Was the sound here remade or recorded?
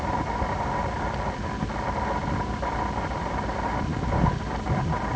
recorded